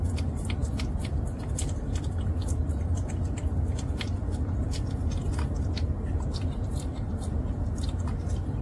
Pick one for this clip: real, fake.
real